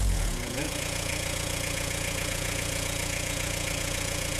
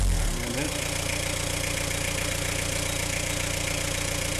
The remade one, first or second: first